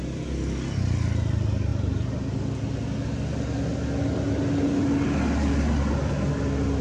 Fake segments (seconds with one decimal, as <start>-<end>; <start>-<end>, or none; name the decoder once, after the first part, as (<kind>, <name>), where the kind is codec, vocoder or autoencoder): none